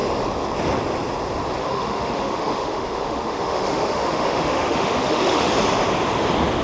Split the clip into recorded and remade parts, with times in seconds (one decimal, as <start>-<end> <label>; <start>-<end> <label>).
0.0-1.6 recorded; 1.6-5.5 remade; 5.5-6.6 recorded